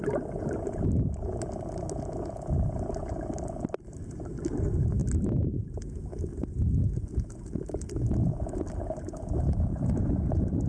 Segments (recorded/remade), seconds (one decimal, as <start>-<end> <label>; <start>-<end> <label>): 0.0-5.0 recorded; 5.0-5.5 remade; 5.5-9.7 recorded; 9.7-10.2 remade; 10.2-10.7 recorded